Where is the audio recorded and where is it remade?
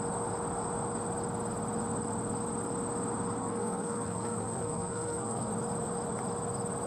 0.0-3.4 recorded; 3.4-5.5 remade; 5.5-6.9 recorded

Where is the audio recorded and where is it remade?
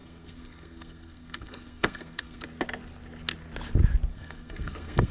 0.0-2.4 remade; 2.4-4.1 recorded; 4.1-5.1 remade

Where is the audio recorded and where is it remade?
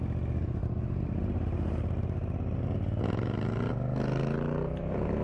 0.0-5.2 recorded